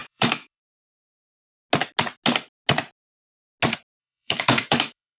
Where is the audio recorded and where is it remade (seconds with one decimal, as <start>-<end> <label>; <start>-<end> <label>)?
0.0-0.6 remade; 0.6-4.0 recorded; 4.0-5.2 remade